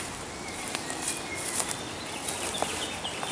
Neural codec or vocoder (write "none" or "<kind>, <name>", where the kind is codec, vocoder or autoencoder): vocoder, BigVGAN v2